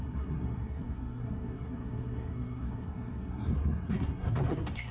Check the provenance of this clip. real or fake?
fake